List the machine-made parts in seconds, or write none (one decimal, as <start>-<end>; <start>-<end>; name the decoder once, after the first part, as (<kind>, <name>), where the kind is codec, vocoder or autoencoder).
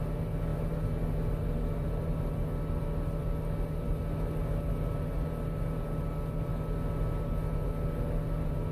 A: none